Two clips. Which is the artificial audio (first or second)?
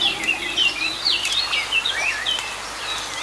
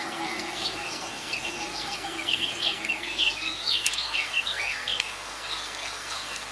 second